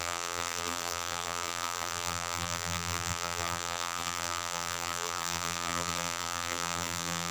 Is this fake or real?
fake